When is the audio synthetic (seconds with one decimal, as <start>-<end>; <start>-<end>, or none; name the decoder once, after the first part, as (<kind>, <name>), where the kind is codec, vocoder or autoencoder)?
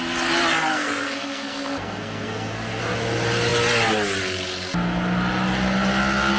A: 0.7-2.8 (codec, SNAC)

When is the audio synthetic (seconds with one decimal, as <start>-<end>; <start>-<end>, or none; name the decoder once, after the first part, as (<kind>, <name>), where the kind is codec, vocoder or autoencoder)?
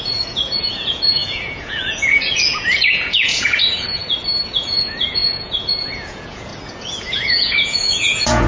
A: 0.0-4.0 (vocoder, Vocos); 4.6-6.5; 7.0-8.5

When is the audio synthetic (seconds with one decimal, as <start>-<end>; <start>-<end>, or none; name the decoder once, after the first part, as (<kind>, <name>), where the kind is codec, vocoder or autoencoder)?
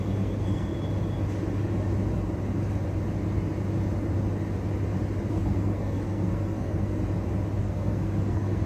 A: 0.0-0.7 (codec, SNAC); 5.3-7.0; 7.6-8.7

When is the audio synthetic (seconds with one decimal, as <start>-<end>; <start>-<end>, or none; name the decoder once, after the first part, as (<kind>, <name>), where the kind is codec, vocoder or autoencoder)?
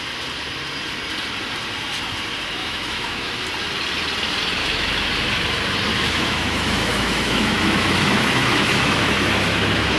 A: 2.6-3.3 (autoencoder, DAC-VAE); 4.6-5.1; 5.9-10.0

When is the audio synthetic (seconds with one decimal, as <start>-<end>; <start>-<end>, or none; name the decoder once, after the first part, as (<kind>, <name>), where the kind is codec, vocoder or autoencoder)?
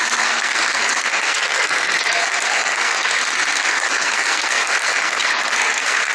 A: 0.0-6.1 (codec, SNAC)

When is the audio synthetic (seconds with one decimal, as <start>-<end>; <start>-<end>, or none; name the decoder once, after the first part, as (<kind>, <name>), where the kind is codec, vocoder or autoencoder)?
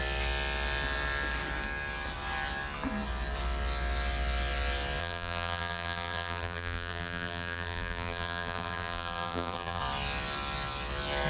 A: 5.0-9.8 (vocoder, BigVGAN v2)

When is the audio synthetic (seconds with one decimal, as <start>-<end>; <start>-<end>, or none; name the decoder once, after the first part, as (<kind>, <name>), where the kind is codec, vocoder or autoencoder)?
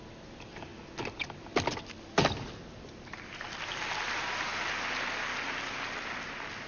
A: none